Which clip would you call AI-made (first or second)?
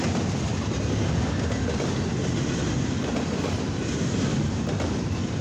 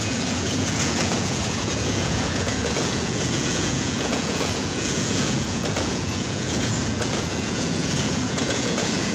second